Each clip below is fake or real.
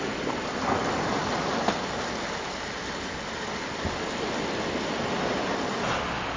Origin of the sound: real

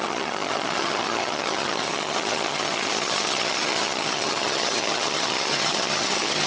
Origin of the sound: fake